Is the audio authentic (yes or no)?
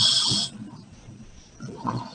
no